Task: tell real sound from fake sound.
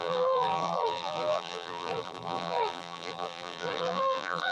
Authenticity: fake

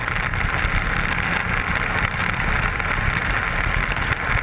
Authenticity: real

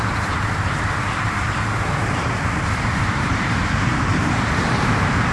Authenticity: fake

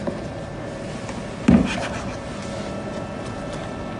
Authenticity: real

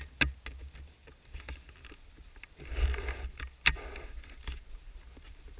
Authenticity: real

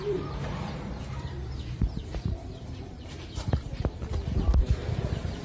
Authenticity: fake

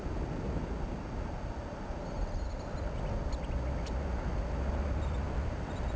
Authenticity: real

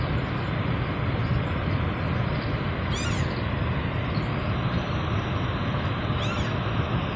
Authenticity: real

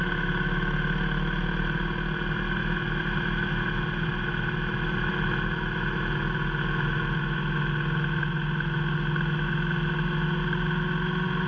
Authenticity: real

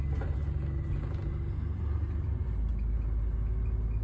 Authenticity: real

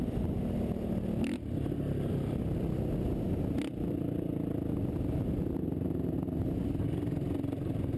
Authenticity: real